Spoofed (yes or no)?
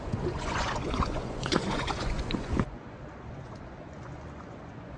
yes